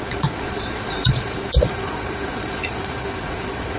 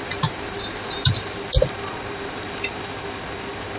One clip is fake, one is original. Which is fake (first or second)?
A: first